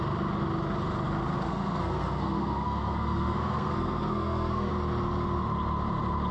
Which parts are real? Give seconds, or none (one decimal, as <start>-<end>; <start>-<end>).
0.0-1.5; 4.7-6.3